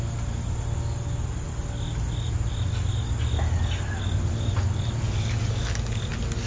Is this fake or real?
real